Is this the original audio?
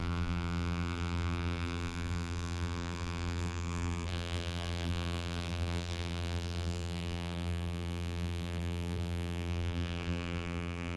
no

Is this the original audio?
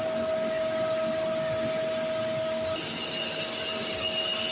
yes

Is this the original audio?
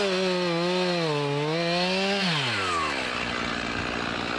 yes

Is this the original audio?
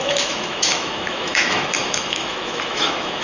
no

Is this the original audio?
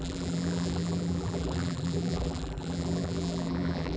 no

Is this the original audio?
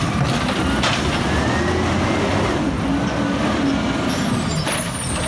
yes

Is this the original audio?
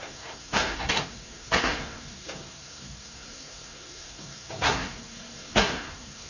no